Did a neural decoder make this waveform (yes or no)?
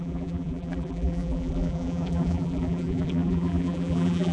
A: yes